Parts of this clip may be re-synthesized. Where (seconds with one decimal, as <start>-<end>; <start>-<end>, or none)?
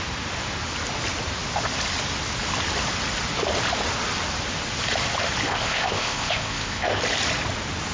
5.5-7.0